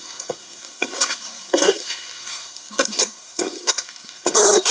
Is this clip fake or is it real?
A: fake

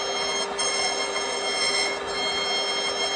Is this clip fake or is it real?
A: real